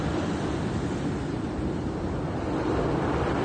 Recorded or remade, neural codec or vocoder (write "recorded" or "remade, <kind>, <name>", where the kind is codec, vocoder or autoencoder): recorded